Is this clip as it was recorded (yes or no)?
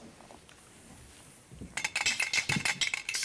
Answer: yes